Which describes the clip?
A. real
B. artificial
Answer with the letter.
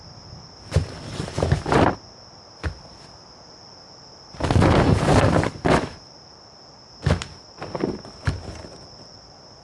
A